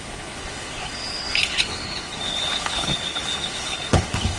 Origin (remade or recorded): remade